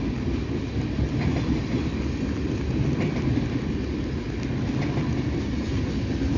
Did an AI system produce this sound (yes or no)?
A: no